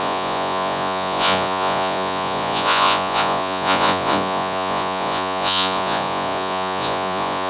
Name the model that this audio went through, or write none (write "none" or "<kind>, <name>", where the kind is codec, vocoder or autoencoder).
vocoder, Vocos